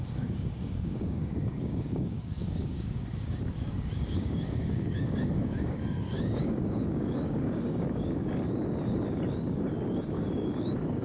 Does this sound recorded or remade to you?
remade